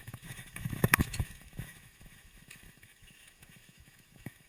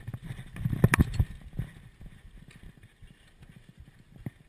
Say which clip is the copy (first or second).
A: first